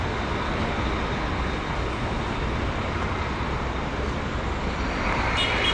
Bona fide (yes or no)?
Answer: yes